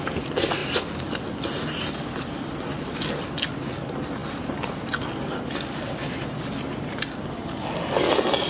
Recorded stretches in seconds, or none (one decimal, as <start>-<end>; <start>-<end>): 0.0-8.5